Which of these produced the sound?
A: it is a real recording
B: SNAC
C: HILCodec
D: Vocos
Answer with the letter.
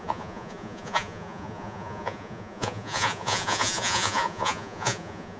D